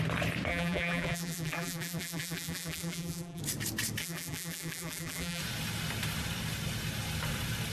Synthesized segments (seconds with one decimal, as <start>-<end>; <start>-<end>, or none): 0.5-3.4; 4.0-5.4